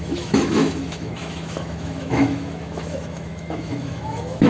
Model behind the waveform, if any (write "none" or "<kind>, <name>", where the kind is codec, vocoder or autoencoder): autoencoder, DAC-VAE